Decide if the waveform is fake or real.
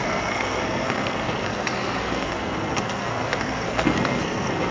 fake